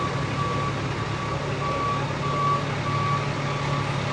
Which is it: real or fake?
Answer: real